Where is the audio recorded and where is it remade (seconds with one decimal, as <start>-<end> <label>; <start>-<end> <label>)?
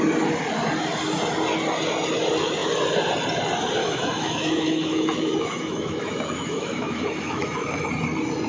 0.0-3.8 recorded; 3.8-7.9 remade; 7.9-8.5 recorded